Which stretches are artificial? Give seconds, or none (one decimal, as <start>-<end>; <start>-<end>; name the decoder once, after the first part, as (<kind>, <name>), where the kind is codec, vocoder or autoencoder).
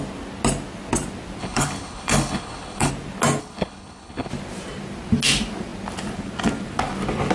1.4-2.9 (codec, HILCodec); 3.4-4.3